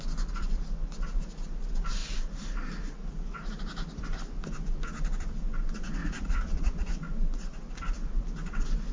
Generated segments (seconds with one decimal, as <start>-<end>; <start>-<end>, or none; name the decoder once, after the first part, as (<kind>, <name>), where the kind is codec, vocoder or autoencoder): 6.0-7.0 (vocoder, Vocos)